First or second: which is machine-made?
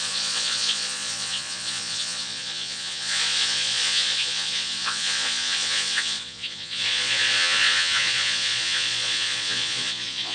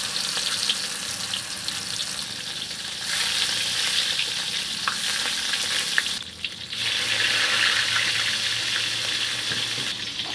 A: first